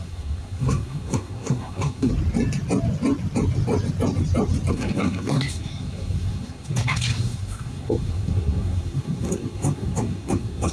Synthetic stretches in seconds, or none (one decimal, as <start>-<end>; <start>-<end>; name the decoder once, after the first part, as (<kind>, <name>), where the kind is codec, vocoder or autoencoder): 0.0-2.1 (codec, SNAC); 4.7-10.7